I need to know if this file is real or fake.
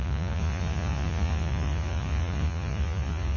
fake